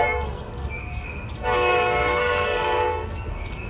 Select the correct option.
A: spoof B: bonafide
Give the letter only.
A